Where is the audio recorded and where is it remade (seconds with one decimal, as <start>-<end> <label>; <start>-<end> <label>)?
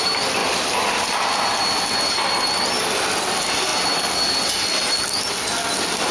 0.0-6.1 recorded